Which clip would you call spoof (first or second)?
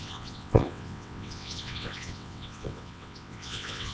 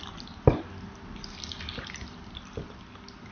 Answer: first